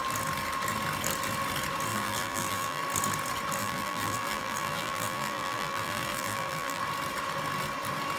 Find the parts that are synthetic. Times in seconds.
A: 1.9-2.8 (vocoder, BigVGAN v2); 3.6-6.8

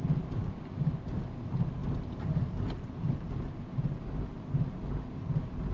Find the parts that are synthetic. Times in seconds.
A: 0.4-1.2 (codec, DAC)

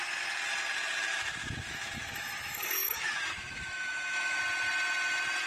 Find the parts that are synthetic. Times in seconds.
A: 1.1-4.4 (autoencoder, DAC-VAE)

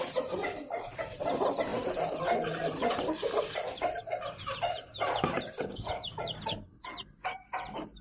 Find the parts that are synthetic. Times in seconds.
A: 0.0-8.0 (vocoder, BigVGAN v2)

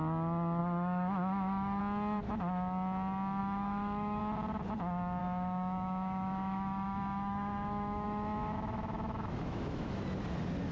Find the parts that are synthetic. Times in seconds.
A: 0.6-1.8 (autoencoder, DAC-VAE); 3.4-4.2; 5.2-10.0

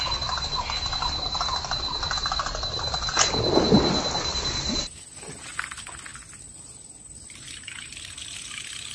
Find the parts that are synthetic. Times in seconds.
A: none

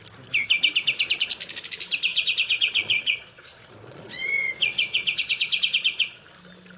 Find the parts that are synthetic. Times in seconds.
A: 2.1-6.2 (vocoder, Vocos)